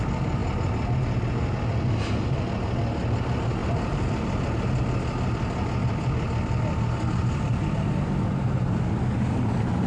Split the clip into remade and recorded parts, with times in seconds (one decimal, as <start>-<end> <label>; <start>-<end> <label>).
0.0-3.6 recorded; 3.6-4.4 remade; 4.4-9.9 recorded